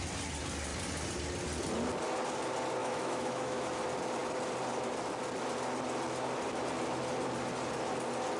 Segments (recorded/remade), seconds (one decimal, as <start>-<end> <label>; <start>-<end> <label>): 0.0-2.8 recorded; 2.8-3.8 remade; 3.8-8.4 recorded